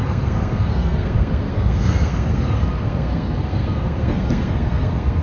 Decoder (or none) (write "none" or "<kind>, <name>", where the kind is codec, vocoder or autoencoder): codec, SNAC